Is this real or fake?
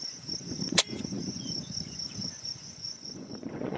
fake